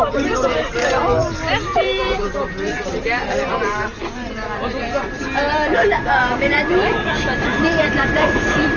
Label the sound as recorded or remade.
remade